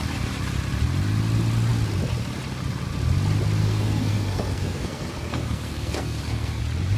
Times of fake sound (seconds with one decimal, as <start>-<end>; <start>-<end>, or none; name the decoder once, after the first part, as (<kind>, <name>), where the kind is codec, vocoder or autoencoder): 3.6-6.6 (codec, SNAC)